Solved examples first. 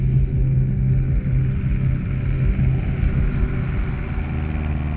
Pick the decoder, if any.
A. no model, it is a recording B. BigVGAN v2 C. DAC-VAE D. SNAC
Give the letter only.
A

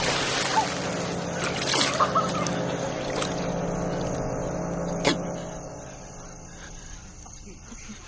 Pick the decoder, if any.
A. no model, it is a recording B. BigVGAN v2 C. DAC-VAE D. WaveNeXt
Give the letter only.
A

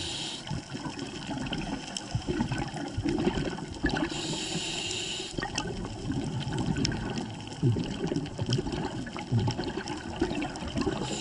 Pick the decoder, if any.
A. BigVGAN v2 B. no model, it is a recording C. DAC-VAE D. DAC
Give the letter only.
A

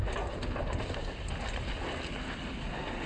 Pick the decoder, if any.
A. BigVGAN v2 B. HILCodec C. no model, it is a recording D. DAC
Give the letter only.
C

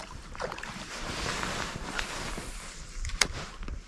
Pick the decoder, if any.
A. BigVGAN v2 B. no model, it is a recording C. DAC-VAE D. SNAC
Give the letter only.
A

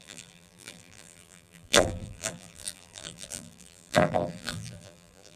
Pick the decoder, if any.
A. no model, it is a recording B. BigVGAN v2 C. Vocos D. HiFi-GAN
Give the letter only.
B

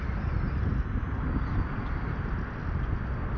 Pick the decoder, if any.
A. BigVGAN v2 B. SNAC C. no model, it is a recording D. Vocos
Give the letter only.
C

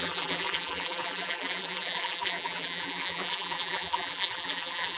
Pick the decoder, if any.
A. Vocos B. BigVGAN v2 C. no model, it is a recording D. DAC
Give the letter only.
B